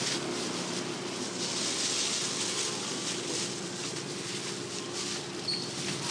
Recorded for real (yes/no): yes